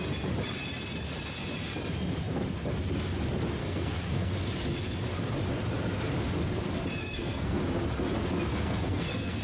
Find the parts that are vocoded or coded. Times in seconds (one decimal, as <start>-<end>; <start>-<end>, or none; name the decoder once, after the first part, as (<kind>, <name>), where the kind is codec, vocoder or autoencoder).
3.6-4.3 (codec, SNAC); 7.0-7.6; 8.5-9.4